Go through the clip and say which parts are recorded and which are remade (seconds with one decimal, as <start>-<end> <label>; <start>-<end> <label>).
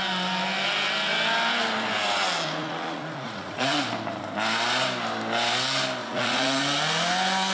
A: 0.0-2.6 recorded; 2.6-3.8 remade; 3.8-6.0 recorded; 6.0-6.6 remade; 6.6-7.5 recorded